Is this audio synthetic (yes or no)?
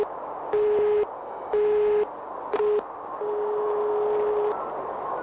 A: no